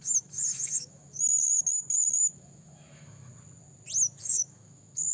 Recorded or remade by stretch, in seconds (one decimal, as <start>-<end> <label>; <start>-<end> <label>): 0.0-3.3 remade; 3.3-4.2 recorded; 4.2-5.1 remade